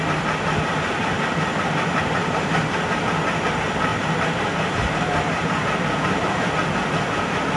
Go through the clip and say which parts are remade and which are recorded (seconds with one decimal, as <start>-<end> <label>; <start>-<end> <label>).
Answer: 0.0-2.2 recorded; 2.2-3.0 remade; 3.0-3.9 recorded; 3.9-6.5 remade; 6.5-7.6 recorded